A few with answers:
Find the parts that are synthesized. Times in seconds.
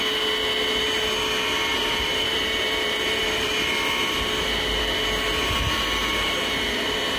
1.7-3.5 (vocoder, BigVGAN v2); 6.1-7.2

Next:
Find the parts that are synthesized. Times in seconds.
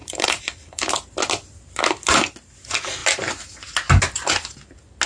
0.0-0.9 (vocoder, BigVGAN v2)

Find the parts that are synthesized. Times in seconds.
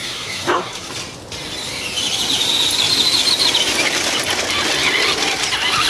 0.0-0.9 (codec, SNAC)